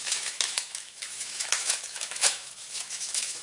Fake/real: fake